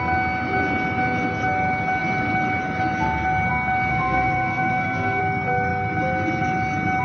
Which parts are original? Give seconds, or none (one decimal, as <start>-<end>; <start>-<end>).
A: 0.0-3.9; 5.2-7.0